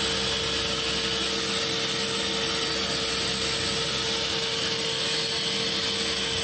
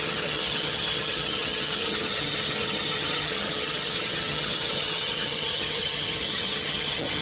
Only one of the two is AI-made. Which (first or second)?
second